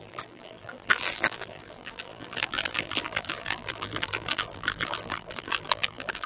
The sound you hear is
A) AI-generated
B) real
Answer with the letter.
A